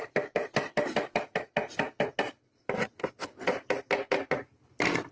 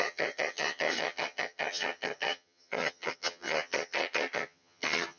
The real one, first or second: first